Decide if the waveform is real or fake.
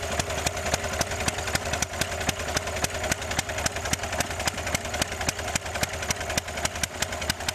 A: real